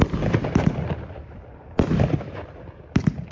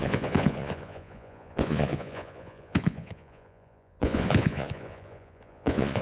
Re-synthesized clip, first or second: second